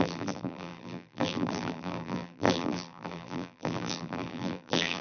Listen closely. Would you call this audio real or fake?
fake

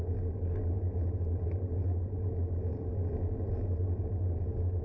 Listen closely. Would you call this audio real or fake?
real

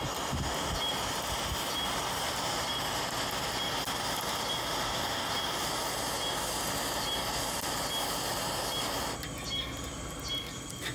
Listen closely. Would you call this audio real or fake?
real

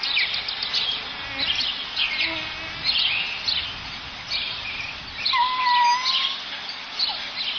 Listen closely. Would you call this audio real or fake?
real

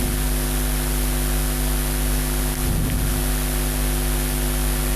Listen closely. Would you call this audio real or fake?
real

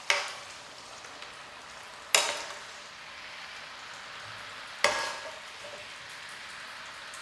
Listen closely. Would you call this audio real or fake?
real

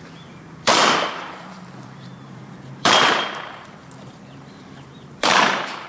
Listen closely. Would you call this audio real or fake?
fake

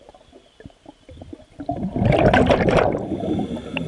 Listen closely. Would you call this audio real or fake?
real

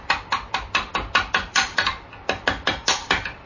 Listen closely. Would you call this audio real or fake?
fake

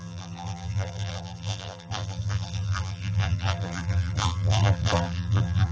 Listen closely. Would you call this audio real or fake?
fake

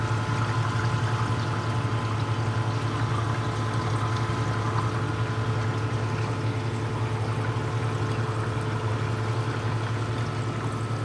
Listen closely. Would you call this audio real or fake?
real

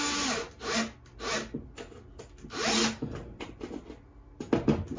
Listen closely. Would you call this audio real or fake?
real